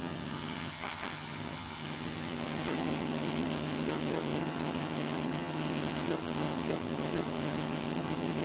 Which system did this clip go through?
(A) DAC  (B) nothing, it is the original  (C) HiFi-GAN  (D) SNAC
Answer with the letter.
C